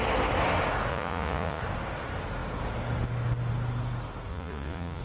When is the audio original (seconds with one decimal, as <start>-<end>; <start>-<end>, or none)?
0.0-0.9; 1.6-4.3